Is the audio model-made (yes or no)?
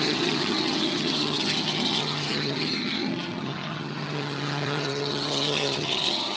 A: yes